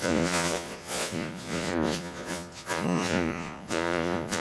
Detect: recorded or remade remade